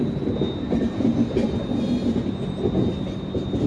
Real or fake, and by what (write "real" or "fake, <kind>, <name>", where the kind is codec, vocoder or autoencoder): real